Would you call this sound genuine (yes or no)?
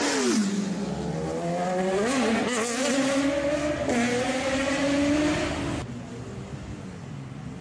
yes